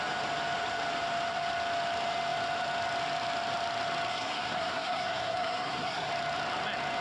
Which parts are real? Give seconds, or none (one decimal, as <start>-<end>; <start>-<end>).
0.0-4.1; 6.1-7.0